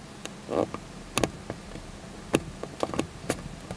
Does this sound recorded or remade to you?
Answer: recorded